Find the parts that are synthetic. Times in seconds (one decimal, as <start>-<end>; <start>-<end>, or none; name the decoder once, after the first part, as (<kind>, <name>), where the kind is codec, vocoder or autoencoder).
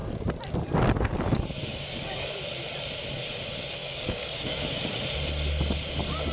1.6-2.3 (codec, DAC); 3.8-5.0